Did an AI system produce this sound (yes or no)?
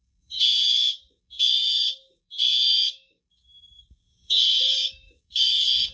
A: yes